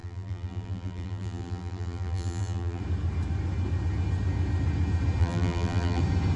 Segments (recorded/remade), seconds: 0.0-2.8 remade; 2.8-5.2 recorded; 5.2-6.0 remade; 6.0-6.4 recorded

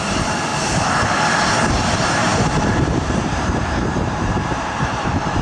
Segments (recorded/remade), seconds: 0.0-0.5 remade; 0.5-1.7 recorded; 1.7-5.4 remade